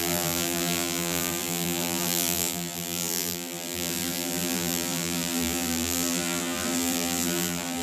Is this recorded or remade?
remade